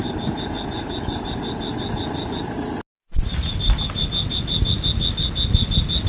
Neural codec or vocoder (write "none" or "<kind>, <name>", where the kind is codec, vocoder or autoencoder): none